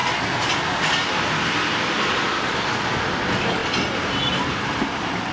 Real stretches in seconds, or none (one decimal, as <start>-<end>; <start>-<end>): 0.0-3.6